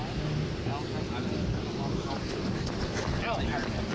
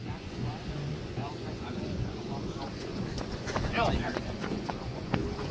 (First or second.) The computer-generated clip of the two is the second